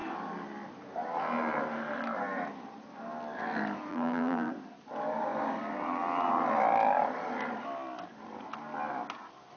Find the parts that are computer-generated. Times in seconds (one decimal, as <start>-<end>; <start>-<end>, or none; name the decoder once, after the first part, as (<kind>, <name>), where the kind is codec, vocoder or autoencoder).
3.9-4.5 (vocoder, BigVGAN v2)